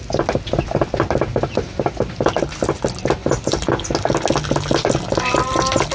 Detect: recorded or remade recorded